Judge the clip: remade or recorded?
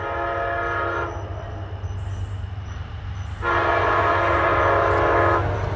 recorded